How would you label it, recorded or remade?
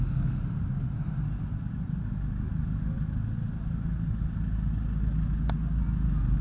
recorded